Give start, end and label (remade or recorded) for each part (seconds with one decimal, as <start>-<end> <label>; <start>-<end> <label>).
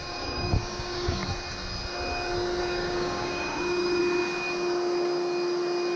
0.0-1.2 remade; 1.2-2.6 recorded; 2.6-4.0 remade; 4.0-6.0 recorded